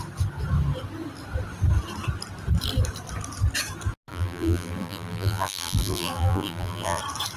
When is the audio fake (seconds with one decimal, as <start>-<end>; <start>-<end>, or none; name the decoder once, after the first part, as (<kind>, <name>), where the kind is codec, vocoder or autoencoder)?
4.1-7.0 (vocoder, BigVGAN v2)